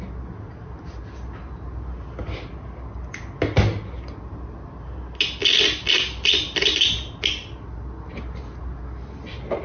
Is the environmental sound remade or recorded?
recorded